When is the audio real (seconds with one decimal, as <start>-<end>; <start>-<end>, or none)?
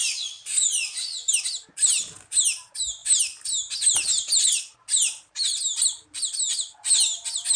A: 0.0-7.6